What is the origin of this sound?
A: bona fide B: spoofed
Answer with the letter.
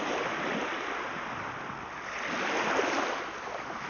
A